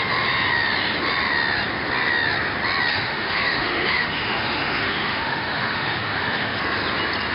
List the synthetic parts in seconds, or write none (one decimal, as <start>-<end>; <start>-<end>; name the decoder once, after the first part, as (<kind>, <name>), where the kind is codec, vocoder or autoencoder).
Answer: 2.9-6.6 (autoencoder, DAC-VAE)